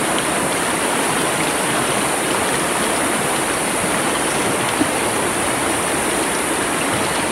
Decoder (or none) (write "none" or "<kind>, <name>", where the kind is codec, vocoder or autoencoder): vocoder, BigVGAN v2